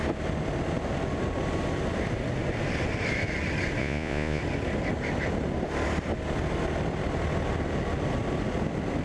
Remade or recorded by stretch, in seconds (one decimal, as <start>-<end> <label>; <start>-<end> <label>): 0.0-3.8 recorded; 3.8-4.4 remade; 4.4-9.0 recorded